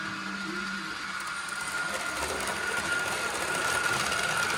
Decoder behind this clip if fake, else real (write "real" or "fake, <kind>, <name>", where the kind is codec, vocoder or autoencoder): real